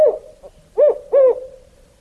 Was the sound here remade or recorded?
recorded